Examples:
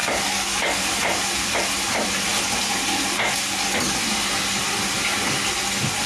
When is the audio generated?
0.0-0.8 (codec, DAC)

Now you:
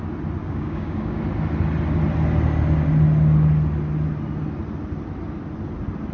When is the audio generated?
0.4-1.2 (codec, DAC)